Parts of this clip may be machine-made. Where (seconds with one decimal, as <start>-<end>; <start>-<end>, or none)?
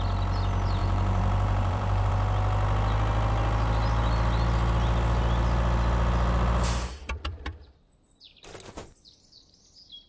0.8-2.1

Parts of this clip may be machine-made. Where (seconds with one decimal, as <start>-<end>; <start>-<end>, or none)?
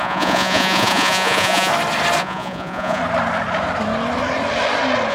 0.0-1.7; 2.2-3.0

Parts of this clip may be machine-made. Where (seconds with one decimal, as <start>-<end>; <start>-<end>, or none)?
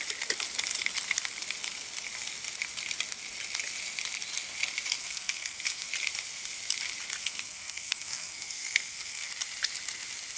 5.0-5.9; 7.2-9.3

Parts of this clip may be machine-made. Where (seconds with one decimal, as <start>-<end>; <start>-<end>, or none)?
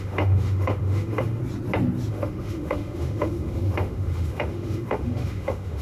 0.0-1.4; 2.1-5.8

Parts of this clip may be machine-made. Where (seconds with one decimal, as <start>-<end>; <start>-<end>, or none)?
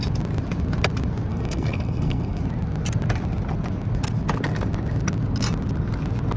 1.3-2.4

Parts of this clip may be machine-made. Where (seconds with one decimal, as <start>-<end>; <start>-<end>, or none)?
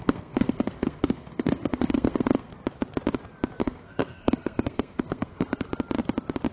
0.0-2.5; 3.6-5.7